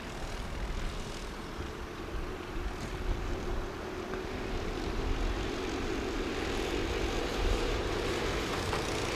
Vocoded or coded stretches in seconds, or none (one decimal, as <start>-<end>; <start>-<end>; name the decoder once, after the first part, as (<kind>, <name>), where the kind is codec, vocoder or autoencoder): 1.2-2.9 (vocoder, BigVGAN v2); 7.3-8.1

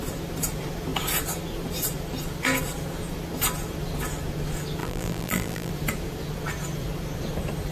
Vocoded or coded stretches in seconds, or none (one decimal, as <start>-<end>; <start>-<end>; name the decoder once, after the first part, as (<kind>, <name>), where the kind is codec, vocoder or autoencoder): 4.8-5.7 (vocoder, BigVGAN v2)

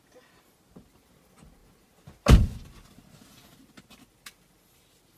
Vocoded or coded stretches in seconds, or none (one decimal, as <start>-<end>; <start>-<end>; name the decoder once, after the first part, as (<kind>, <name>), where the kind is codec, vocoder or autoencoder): none

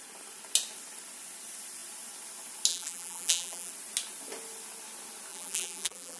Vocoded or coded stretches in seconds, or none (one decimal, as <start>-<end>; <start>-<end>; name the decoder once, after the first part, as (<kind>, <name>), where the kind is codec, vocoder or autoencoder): 2.7-3.7 (vocoder, BigVGAN v2); 5.3-6.2